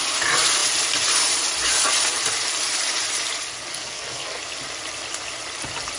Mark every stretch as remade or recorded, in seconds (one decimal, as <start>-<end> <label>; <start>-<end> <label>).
0.0-3.7 recorded; 3.7-4.4 remade; 4.4-6.0 recorded